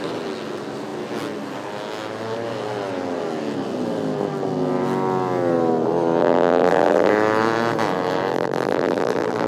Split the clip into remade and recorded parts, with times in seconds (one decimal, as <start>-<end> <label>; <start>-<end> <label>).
0.0-6.2 recorded; 6.2-7.1 remade; 7.1-8.3 recorded; 8.3-9.5 remade